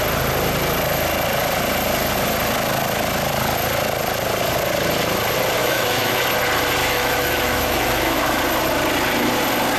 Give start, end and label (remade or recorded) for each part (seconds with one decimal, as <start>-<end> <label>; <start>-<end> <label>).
0.0-5.6 recorded; 5.6-6.2 remade; 6.2-6.8 recorded; 6.8-8.4 remade; 8.4-9.8 recorded

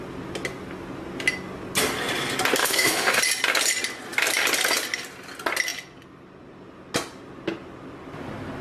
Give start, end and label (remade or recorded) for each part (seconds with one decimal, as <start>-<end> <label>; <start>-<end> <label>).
0.0-2.6 recorded; 2.6-3.2 remade; 3.2-8.6 recorded

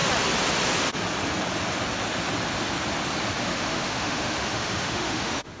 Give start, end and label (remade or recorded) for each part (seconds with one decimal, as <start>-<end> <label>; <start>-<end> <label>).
0.0-3.4 recorded; 3.4-5.6 remade

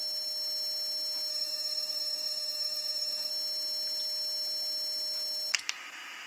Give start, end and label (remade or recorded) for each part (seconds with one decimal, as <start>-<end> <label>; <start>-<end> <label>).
0.0-1.3 recorded; 1.3-3.3 remade; 3.3-6.3 recorded

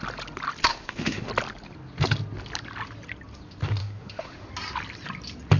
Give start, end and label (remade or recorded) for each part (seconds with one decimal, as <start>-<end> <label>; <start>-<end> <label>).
0.0-0.7 recorded; 0.7-1.3 remade; 1.3-3.8 recorded; 3.8-4.5 remade; 4.5-5.6 recorded

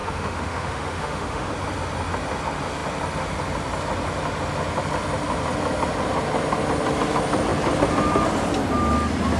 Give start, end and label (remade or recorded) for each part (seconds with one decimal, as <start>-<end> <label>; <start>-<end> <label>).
0.0-1.5 remade; 1.5-9.4 recorded